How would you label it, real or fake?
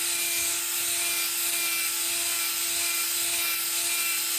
real